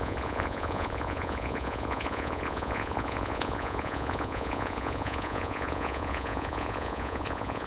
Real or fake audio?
fake